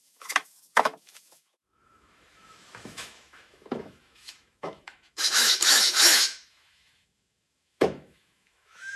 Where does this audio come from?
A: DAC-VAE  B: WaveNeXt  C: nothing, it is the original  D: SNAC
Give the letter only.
A